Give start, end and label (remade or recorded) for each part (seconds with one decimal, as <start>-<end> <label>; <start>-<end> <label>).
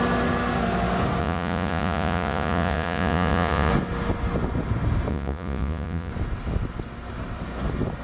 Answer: 0.0-1.2 recorded; 1.2-3.7 remade; 3.7-5.1 recorded; 5.1-6.1 remade; 6.1-8.0 recorded